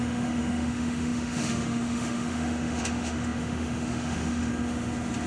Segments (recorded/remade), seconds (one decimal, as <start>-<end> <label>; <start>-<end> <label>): 0.0-4.5 remade; 4.5-5.3 recorded